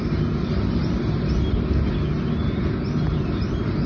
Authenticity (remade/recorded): recorded